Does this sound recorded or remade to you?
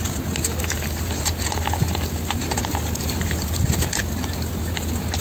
recorded